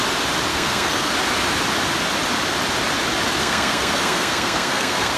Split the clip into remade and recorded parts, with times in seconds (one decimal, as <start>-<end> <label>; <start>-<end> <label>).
0.0-0.5 recorded; 0.5-1.1 remade; 1.1-3.4 recorded; 3.4-5.2 remade